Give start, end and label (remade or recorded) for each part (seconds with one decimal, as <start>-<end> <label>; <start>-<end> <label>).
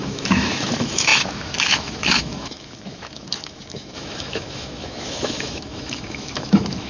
0.0-6.9 remade